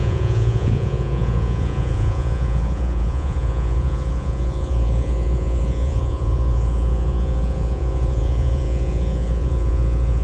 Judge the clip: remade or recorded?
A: remade